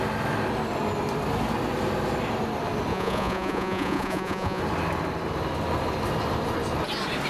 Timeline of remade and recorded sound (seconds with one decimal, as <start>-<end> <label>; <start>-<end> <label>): 0.0-2.9 recorded; 2.9-4.6 remade; 4.6-7.3 recorded